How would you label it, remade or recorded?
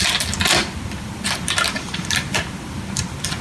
recorded